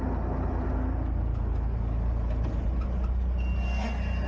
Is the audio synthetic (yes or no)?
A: no